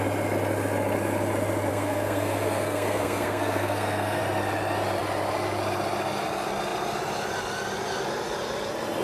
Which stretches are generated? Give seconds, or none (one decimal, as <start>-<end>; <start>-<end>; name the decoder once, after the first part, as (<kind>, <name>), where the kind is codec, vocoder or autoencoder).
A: 1.7-4.2 (codec, SNAC)